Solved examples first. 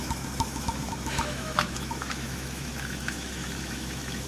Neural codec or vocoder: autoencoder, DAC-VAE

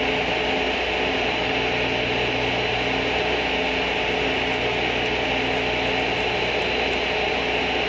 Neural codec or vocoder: none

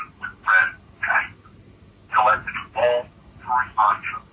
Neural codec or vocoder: none